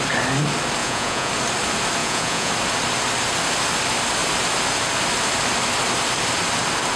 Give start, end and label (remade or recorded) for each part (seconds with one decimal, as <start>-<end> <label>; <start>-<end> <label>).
0.0-0.8 recorded; 0.8-1.3 remade; 1.3-2.0 recorded; 2.0-2.5 remade; 2.5-7.0 recorded